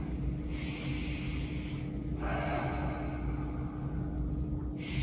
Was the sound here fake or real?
real